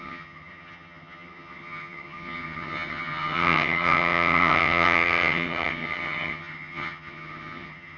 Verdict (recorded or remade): remade